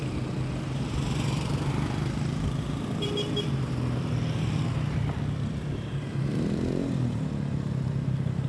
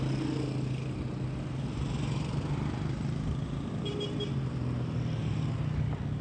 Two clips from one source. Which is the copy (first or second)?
first